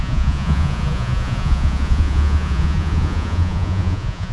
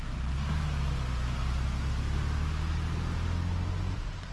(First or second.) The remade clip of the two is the first